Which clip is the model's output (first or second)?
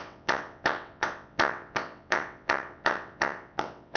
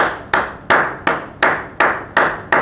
first